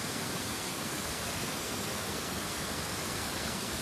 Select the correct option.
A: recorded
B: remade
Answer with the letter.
B